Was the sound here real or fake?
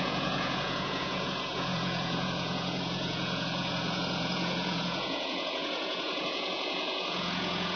fake